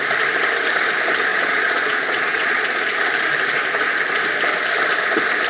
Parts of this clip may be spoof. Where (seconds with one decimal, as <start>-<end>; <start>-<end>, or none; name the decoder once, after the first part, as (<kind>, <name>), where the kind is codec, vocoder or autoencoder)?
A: 1.3-2.8 (vocoder, Vocos)